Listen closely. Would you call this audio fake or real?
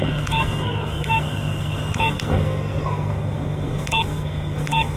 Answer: fake